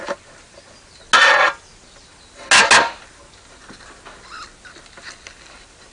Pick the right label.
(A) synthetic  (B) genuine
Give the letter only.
B